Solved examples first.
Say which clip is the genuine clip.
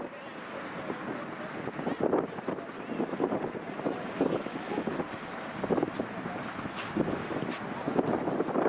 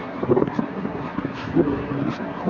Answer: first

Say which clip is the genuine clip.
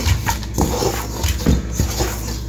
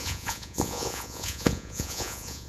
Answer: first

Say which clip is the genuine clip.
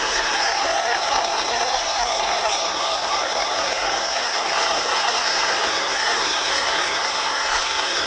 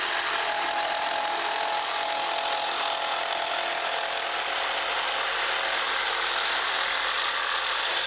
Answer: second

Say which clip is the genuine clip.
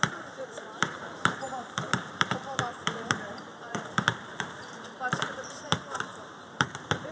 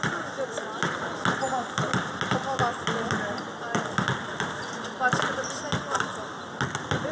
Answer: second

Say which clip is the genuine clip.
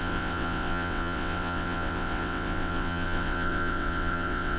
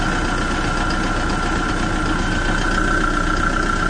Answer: second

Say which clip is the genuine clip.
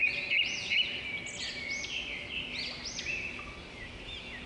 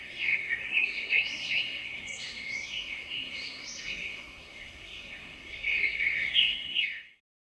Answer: first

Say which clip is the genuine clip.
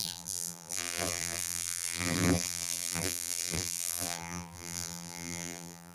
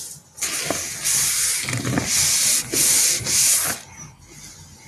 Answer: second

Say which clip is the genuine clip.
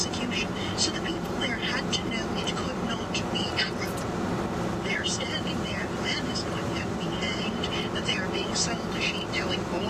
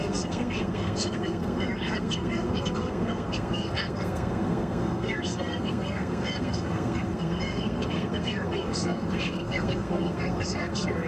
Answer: first